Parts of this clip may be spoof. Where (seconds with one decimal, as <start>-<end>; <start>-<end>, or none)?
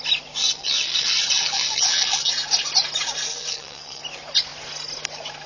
0.4-2.3; 3.3-4.0